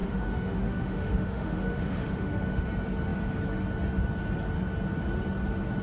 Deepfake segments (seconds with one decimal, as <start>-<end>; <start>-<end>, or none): 0.0-2.6